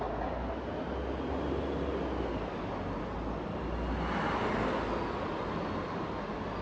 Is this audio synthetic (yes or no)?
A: no